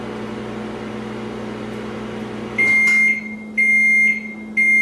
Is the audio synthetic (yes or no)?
no